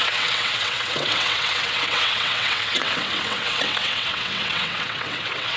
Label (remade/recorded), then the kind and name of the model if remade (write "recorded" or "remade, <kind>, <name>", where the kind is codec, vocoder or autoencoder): remade, vocoder, WaveNeXt